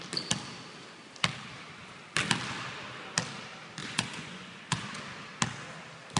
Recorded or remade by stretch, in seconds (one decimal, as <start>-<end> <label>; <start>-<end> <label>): 0.0-3.8 recorded; 3.8-5.0 remade; 5.0-6.2 recorded